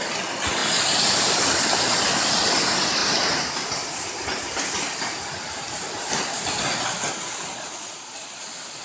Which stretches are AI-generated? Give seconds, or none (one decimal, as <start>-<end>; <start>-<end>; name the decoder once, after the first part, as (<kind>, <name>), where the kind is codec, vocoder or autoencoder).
7.5-8.4 (vocoder, Vocos)